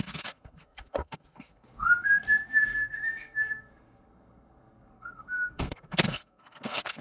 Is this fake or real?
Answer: fake